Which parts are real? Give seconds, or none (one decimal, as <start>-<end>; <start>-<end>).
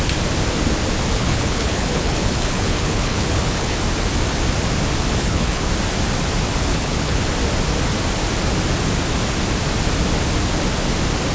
0.0-1.1; 3.8-5.2; 5.7-6.7; 7.2-11.3